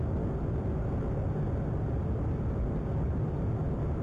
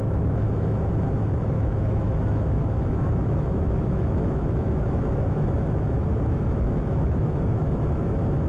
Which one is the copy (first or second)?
second